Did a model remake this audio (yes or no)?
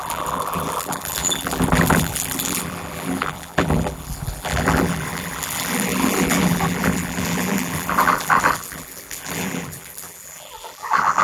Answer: yes